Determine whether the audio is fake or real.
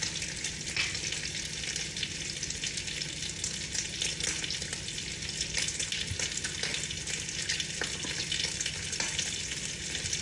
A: real